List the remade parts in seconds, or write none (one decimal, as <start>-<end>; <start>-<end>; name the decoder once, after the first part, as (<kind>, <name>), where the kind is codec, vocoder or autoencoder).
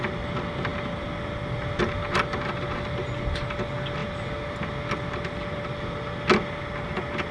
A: none